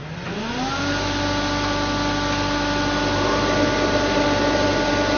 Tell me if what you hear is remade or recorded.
recorded